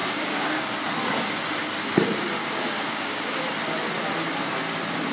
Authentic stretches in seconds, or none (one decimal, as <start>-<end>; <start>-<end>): 0.6-2.4; 3.4-5.1